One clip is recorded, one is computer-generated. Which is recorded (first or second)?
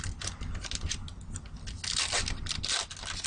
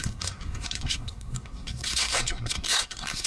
first